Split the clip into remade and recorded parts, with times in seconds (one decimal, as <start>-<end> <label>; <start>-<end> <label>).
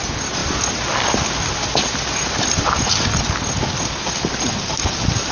0.0-5.3 recorded